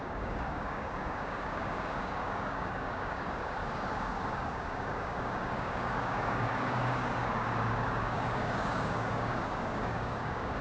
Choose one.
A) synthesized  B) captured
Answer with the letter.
A